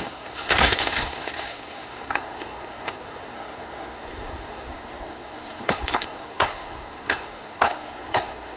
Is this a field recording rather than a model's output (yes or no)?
no